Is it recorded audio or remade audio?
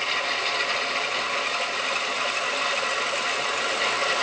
recorded